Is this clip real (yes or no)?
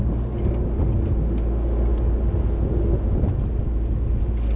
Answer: yes